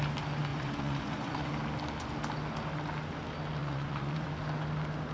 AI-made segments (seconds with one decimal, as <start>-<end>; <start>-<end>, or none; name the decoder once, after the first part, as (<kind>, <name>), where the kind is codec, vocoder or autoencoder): 0.5-1.5 (vocoder, Vocos); 3.6-4.3